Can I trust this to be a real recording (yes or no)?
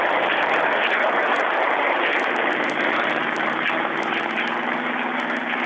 yes